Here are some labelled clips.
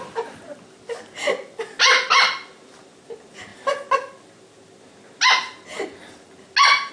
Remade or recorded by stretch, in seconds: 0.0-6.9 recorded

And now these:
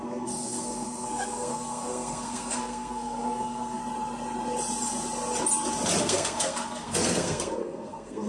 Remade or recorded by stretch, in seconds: 0.0-3.8 remade; 3.8-6.0 recorded; 6.0-8.3 remade

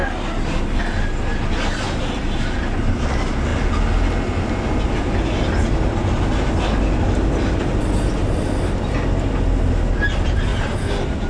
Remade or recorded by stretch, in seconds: 0.0-11.3 recorded

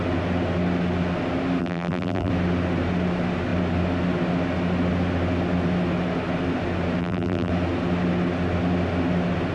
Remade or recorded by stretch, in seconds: 0.0-1.6 recorded; 1.6-2.3 remade; 2.3-7.0 recorded; 7.0-7.5 remade; 7.5-9.5 recorded